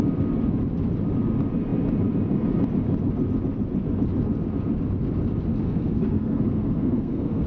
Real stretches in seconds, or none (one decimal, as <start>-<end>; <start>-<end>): 0.0-5.5